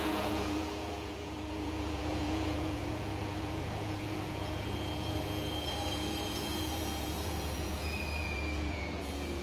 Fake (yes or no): yes